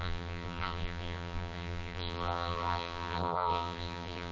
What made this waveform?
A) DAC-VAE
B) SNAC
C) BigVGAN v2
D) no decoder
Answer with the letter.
C